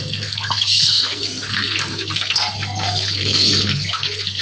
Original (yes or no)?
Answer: no